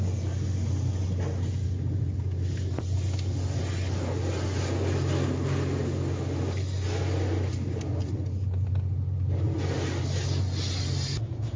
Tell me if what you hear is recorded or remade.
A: recorded